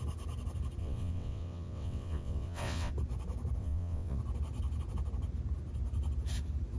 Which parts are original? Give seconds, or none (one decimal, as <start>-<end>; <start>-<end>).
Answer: 0.0-0.8; 2.9-3.6; 4.2-6.8